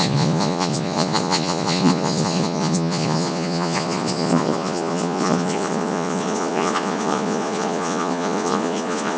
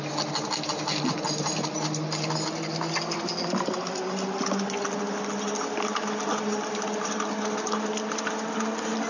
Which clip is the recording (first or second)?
second